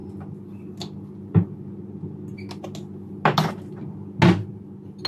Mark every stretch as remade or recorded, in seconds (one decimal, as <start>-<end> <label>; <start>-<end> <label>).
0.0-5.1 recorded